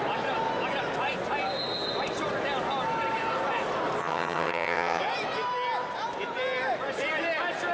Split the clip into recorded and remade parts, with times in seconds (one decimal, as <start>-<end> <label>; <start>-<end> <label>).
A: 0.0-4.0 recorded; 4.0-5.0 remade; 5.0-7.7 recorded